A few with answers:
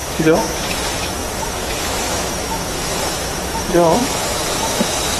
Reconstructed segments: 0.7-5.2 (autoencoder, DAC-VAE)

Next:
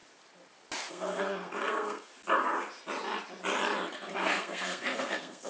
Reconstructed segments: 0.9-2.1 (codec, SNAC); 4.1-5.5

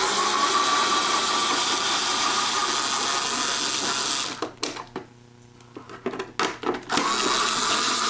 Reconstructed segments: 0.0-2.6 (vocoder, BigVGAN v2); 7.4-8.1